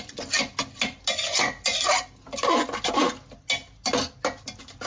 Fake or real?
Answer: real